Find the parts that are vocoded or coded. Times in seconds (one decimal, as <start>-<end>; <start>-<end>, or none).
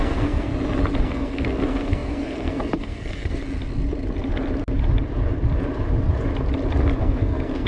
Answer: 0.0-0.5; 1.0-3.4; 7.0-7.7